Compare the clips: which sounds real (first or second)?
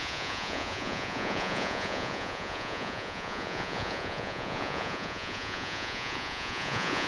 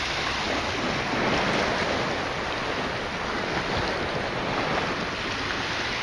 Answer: second